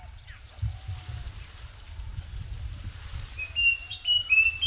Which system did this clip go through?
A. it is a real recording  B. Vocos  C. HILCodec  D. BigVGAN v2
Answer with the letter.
D